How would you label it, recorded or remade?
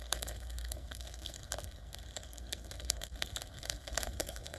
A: remade